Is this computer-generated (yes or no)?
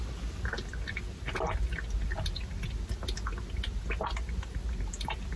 no